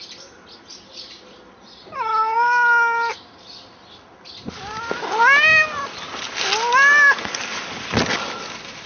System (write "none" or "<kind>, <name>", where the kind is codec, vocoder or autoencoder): none